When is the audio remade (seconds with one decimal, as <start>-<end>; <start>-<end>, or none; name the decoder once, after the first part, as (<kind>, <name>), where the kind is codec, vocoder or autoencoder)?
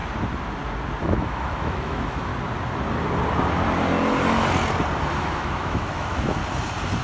1.0-2.3 (autoencoder, DAC-VAE); 5.2-6.4